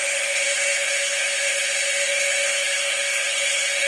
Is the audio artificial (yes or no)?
yes